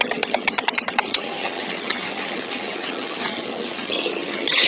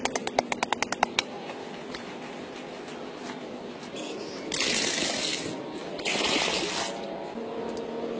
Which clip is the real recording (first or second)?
second